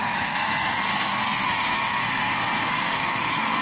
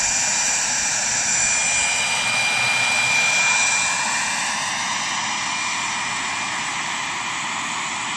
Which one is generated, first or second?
first